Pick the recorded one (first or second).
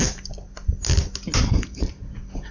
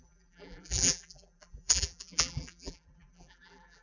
first